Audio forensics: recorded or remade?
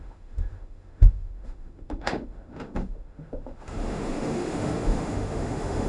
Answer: remade